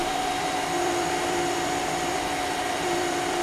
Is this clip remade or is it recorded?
remade